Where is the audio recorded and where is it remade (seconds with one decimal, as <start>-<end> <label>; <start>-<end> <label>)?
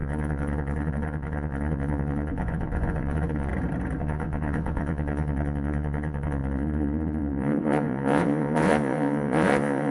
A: 0.0-3.5 remade; 3.5-4.0 recorded; 4.0-9.9 remade